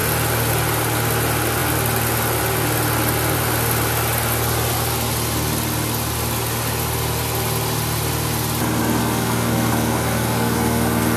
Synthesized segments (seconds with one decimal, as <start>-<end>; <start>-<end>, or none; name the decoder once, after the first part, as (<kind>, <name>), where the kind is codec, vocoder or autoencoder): 9.0-11.2 (codec, SNAC)